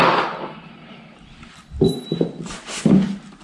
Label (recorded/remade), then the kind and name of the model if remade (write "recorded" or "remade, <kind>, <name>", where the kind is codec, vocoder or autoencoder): recorded